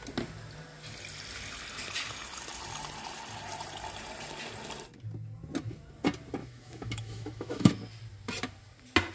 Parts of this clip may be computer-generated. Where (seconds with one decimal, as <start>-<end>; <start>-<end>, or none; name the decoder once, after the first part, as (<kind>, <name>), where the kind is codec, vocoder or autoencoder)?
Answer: 6.4-7.7 (autoencoder, DAC-VAE)